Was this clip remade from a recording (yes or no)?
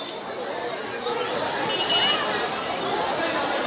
no